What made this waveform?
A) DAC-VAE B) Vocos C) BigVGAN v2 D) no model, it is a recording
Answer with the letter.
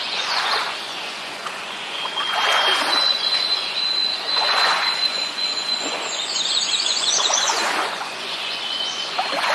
B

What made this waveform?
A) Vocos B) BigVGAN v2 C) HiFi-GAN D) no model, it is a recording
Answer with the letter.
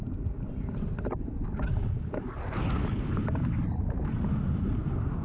D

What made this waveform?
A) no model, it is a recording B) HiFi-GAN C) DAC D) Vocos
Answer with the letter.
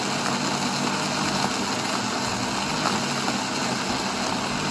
A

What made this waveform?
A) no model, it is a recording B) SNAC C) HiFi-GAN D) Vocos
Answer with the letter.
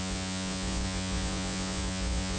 D